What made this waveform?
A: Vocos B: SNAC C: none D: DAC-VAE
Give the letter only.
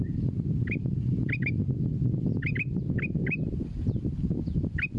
C